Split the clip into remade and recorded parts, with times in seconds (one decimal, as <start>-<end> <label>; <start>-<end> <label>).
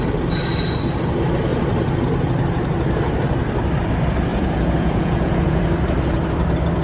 0.0-4.3 recorded; 4.3-5.6 remade; 5.6-6.8 recorded